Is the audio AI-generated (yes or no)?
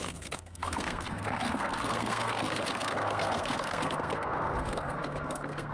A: yes